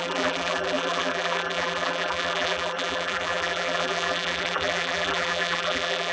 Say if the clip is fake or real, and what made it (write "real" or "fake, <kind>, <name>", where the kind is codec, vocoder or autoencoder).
fake, vocoder, BigVGAN v2